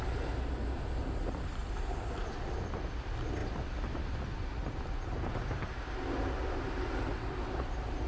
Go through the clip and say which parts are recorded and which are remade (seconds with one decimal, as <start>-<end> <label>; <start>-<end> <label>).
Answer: 0.0-1.6 recorded; 1.6-2.3 remade; 2.3-8.1 recorded